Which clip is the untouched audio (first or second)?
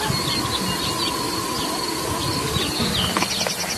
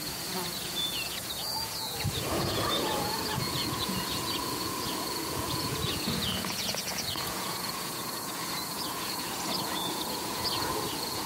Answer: first